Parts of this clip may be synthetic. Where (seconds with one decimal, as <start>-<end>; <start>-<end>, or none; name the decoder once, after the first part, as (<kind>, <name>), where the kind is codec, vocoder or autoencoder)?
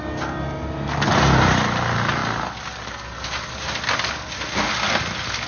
none